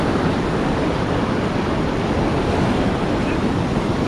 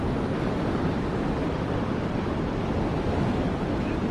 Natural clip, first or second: first